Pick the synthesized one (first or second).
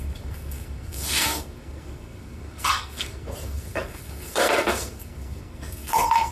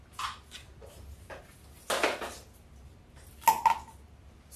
first